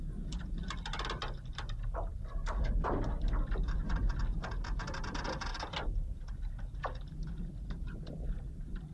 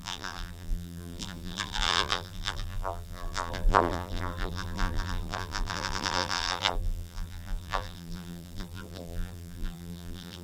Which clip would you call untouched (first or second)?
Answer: first